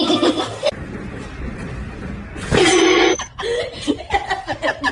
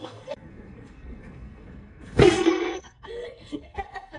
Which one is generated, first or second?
second